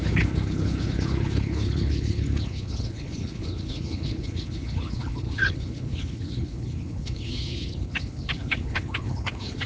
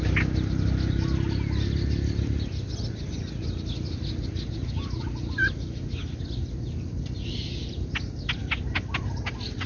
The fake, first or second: first